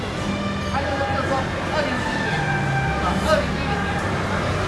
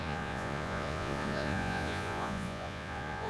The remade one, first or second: second